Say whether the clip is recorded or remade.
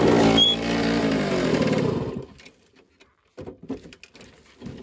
recorded